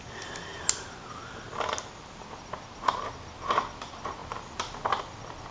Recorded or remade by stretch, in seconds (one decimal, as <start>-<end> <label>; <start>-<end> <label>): 0.0-5.5 recorded